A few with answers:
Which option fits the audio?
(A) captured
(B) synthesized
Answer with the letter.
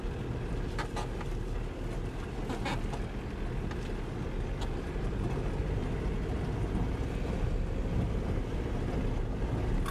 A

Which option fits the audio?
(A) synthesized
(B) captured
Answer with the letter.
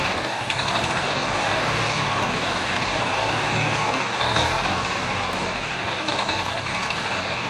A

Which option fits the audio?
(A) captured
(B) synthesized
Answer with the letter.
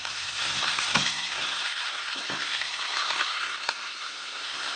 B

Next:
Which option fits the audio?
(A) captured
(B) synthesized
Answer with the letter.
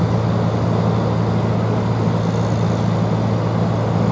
A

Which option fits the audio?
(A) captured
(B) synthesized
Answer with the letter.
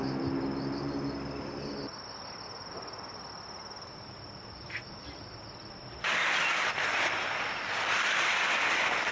A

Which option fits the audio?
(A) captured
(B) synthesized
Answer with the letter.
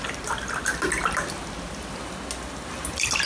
A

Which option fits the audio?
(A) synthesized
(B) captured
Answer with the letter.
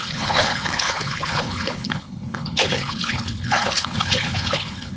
A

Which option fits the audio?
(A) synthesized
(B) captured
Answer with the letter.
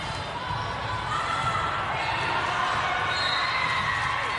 B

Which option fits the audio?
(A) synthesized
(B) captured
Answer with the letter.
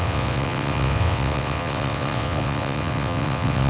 A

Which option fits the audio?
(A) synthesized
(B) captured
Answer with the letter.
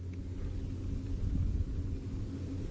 B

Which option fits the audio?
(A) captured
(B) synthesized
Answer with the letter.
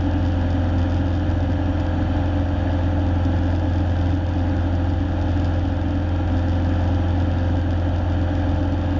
A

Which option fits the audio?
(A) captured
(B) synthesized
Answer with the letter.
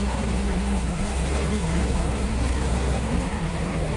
B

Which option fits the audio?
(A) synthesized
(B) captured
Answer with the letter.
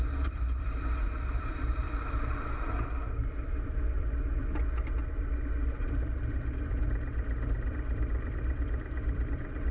A